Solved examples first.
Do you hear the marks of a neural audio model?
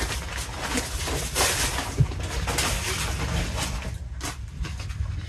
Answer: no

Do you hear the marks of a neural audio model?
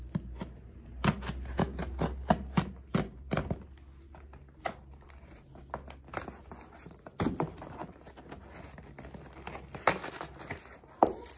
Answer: no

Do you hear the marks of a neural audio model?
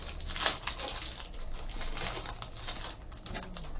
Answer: no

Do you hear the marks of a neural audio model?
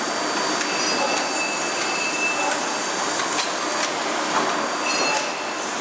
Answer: no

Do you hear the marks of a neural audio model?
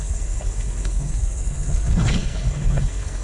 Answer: yes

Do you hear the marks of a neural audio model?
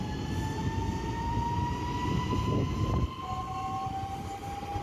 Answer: no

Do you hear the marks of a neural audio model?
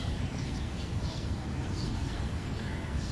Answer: yes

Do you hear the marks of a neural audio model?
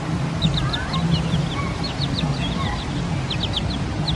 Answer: no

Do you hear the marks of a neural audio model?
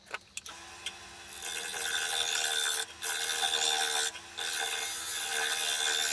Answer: no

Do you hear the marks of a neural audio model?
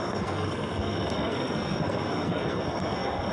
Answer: yes